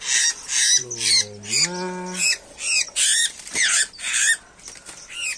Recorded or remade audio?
recorded